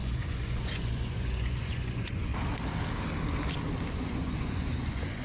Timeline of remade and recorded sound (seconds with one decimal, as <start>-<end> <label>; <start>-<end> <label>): 0.0-2.3 remade; 2.3-3.9 recorded; 3.9-5.2 remade